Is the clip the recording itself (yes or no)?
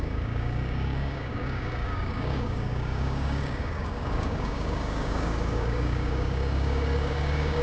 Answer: no